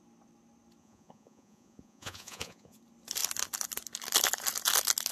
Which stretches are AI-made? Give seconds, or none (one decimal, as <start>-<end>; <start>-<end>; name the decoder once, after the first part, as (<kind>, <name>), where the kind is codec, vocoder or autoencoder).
0.8-2.8 (vocoder, Vocos)